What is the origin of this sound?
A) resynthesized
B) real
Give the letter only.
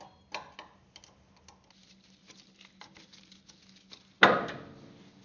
B